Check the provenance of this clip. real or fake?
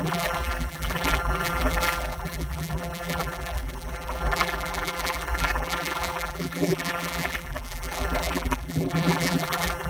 fake